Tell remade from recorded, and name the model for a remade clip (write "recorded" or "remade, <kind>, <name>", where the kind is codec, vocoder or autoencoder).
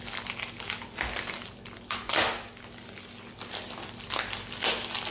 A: recorded